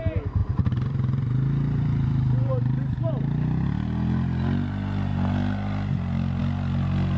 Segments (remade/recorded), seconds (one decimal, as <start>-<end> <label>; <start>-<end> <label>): 0.0-0.4 recorded; 0.4-3.1 remade; 3.1-7.2 recorded

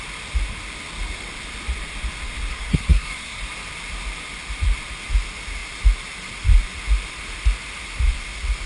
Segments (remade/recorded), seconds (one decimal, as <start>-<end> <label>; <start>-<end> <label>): 0.0-2.5 recorded; 2.5-3.4 remade; 3.4-8.7 recorded

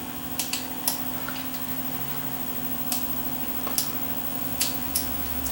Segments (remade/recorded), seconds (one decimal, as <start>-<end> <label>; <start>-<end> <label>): 0.0-4.3 recorded; 4.3-5.5 remade

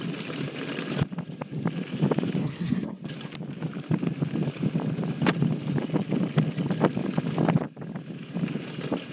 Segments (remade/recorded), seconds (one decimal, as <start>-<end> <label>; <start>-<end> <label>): 0.0-2.4 recorded; 2.4-3.0 remade; 3.0-9.1 recorded